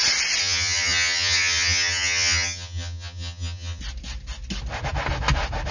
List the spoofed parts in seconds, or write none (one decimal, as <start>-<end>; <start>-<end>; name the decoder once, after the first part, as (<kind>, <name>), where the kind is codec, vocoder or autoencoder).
0.4-3.8 (vocoder, HiFi-GAN)